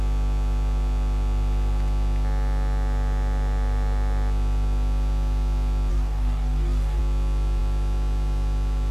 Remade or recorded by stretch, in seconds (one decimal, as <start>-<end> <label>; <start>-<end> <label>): 0.0-5.9 recorded; 5.9-7.0 remade; 7.0-8.9 recorded